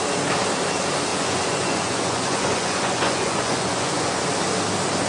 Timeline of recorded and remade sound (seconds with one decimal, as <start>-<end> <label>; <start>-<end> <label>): 0.0-1.1 recorded; 1.1-4.2 remade; 4.2-5.1 recorded